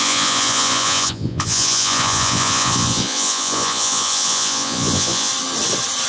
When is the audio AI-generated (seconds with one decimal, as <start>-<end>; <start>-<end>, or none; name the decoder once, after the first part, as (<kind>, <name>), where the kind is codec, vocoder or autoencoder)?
0.0-5.3 (vocoder, Vocos)